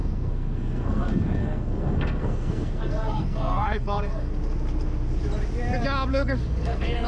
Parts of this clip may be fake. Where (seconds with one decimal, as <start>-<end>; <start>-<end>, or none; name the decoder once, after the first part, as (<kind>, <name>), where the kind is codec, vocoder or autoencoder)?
0.0-4.3 (codec, SNAC); 6.1-7.1